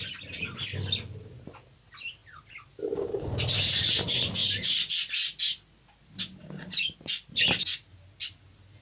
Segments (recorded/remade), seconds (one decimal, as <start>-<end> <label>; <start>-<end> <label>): 0.0-8.8 recorded